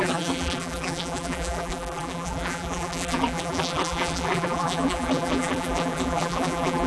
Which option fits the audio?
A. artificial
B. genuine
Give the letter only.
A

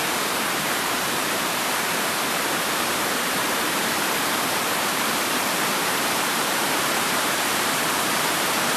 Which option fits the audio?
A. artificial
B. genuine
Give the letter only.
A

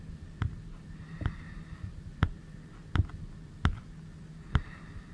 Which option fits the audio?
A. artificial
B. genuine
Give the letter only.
B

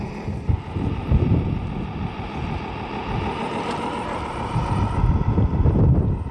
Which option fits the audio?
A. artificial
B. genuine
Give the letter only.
B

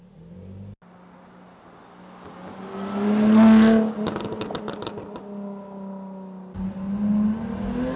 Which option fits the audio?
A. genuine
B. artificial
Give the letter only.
A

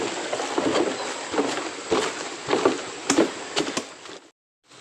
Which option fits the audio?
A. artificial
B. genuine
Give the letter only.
B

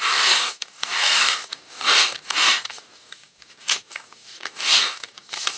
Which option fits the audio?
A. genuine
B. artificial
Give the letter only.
B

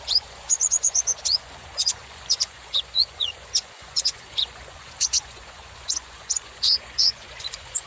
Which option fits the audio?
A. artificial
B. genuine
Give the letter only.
A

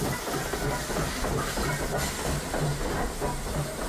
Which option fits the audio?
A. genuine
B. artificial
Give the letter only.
A